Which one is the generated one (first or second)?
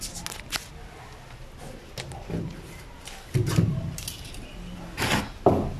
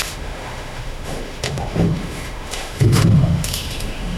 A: second